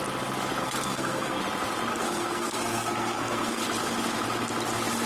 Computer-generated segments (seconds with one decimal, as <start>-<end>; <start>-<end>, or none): 0.6-1.4; 1.9-3.6